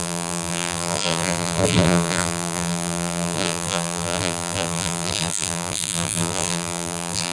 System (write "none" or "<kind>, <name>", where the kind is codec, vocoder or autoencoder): vocoder, BigVGAN v2